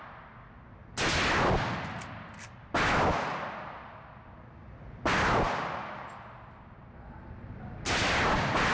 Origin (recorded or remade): recorded